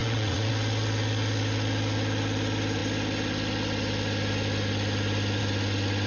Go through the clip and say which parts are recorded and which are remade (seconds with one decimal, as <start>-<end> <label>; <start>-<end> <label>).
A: 0.0-0.5 remade; 0.5-6.1 recorded